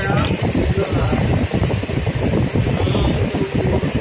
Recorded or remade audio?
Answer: remade